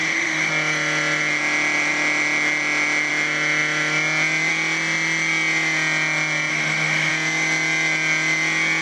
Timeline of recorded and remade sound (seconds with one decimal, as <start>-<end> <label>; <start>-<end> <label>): 0.0-0.5 remade; 0.5-6.5 recorded; 6.5-7.1 remade; 7.1-8.8 recorded